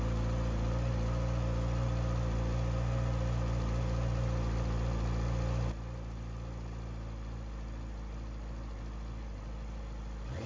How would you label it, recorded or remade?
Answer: recorded